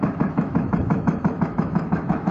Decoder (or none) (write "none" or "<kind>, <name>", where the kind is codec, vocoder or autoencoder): autoencoder, DAC-VAE